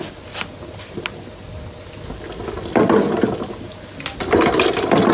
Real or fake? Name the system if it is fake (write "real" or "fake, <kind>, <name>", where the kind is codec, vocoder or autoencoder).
real